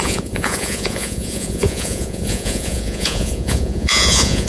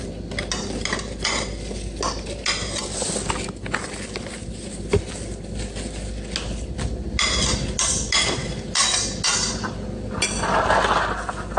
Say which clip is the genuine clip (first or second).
second